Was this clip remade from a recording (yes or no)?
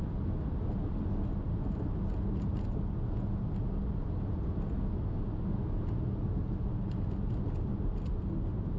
no